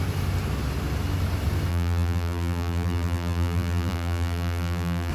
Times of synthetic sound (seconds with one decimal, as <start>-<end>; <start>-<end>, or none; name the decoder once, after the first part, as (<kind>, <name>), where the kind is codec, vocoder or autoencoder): 1.7-5.1 (vocoder, BigVGAN v2)